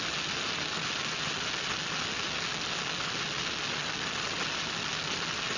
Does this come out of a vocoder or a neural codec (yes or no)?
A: no